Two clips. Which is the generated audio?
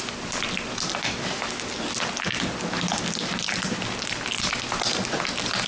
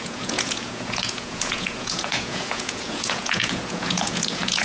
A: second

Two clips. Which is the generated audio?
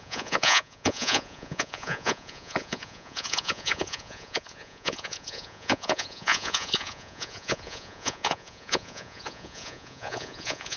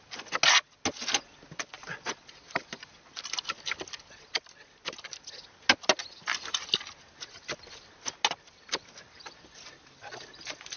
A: first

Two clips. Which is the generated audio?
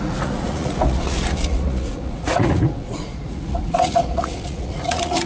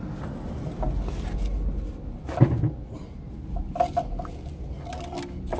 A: first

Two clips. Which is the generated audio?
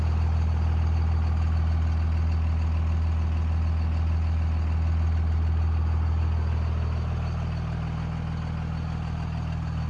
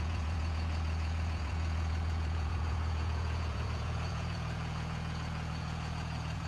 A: second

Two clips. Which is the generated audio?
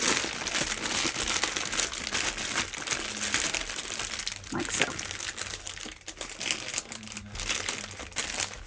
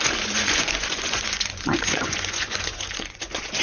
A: second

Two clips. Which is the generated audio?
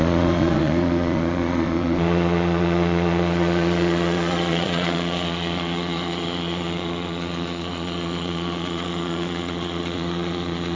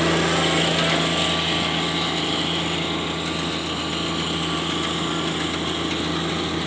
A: first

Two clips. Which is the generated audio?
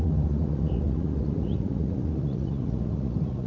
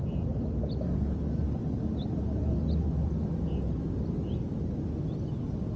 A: first